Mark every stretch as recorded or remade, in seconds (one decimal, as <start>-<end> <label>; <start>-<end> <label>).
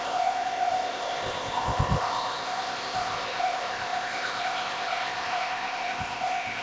0.0-6.6 remade